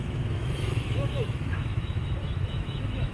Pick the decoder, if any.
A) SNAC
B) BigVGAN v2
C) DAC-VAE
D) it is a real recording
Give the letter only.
C